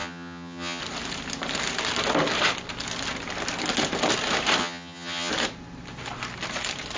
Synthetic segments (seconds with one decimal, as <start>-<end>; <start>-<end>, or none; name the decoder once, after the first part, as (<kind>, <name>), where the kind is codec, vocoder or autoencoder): 0.0-0.8 (vocoder, HiFi-GAN); 4.6-5.3